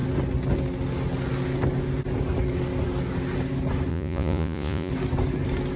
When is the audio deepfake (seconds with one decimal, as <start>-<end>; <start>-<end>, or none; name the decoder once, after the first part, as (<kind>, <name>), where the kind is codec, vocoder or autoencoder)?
3.9-4.9 (vocoder, Vocos)